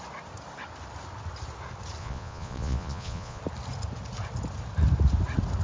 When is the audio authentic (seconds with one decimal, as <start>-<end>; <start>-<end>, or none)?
0.0-2.0; 3.4-5.6